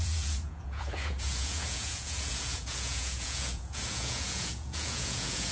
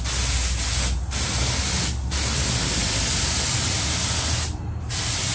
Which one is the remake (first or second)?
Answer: first